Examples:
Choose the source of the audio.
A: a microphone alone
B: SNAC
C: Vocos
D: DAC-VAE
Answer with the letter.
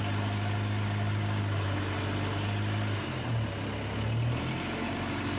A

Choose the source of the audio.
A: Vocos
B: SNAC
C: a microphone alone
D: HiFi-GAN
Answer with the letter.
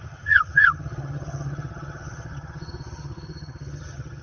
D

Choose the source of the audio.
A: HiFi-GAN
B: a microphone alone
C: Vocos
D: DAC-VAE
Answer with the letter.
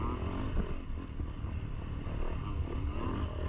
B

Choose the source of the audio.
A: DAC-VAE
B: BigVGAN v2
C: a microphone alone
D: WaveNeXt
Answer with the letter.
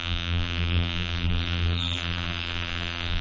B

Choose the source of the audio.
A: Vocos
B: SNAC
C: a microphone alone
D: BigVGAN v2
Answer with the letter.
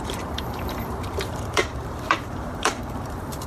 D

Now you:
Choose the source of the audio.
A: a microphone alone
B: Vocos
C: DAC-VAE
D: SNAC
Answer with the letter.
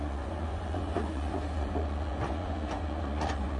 B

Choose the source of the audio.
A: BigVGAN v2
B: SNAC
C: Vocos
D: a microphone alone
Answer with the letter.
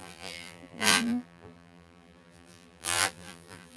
A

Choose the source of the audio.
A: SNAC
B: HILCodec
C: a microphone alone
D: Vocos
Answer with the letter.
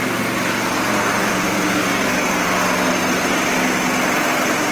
C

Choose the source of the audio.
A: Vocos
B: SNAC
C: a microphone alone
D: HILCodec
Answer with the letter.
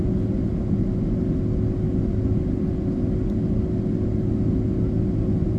C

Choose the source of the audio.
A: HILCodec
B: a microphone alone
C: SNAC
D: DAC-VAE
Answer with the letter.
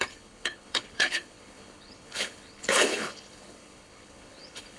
A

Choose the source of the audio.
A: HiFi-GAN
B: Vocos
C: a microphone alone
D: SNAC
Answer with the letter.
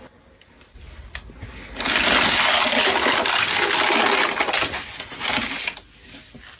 C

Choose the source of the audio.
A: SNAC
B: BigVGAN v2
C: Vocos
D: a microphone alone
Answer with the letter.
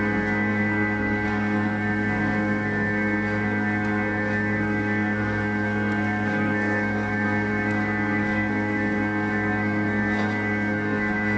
A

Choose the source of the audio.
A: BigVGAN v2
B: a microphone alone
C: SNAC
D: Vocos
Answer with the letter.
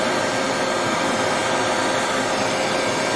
B